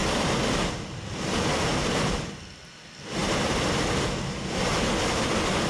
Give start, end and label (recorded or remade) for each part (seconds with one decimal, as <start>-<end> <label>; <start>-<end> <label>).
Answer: 0.0-5.7 recorded